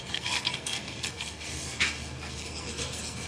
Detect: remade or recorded remade